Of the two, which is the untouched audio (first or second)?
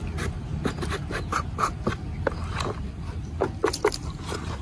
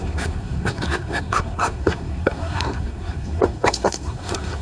first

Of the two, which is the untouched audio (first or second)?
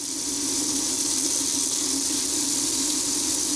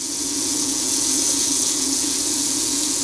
first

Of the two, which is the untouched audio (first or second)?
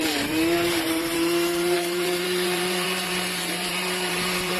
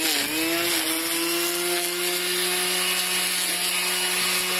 second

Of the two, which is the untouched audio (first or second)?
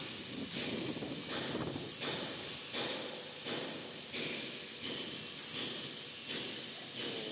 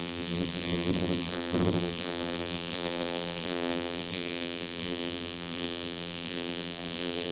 first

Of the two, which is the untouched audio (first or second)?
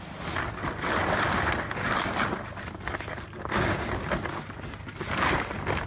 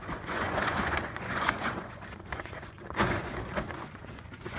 first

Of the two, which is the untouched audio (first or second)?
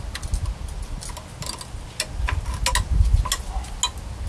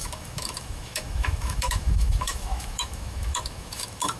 first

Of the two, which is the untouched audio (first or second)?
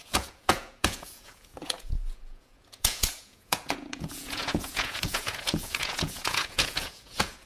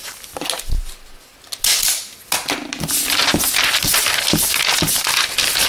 second